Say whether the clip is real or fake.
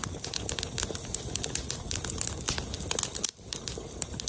real